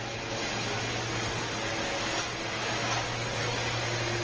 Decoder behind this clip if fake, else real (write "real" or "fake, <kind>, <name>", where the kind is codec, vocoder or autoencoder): real